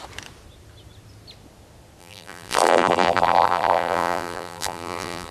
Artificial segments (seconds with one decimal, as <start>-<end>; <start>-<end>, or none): 2.0-5.3